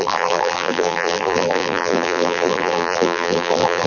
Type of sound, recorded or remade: remade